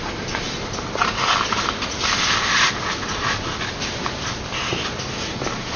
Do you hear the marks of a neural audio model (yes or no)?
no